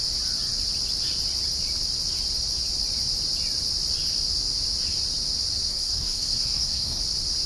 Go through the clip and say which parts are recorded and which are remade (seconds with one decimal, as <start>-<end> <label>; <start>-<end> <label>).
0.0-5.7 recorded; 5.7-7.0 remade; 7.0-7.5 recorded